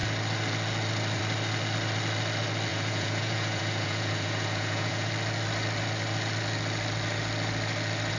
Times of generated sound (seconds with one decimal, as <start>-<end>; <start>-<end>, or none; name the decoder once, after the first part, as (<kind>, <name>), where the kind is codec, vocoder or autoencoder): 2.7-5.1 (vocoder, Vocos)